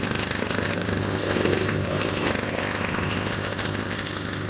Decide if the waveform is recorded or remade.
remade